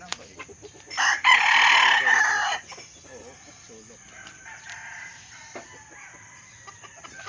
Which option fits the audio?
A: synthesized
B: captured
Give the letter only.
B